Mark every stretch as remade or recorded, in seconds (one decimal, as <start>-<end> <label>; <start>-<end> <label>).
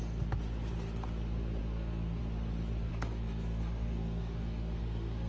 0.0-1.6 recorded; 1.6-2.2 remade; 2.2-2.9 recorded; 2.9-5.3 remade